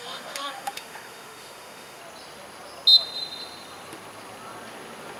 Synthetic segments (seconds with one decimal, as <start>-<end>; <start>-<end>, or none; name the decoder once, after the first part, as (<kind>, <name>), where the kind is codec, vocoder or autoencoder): 0.0-2.0 (autoencoder, DAC-VAE)